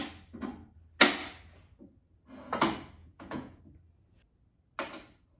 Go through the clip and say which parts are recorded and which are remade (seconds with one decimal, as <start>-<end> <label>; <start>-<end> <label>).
0.0-3.0 recorded; 3.0-3.6 remade; 3.6-5.4 recorded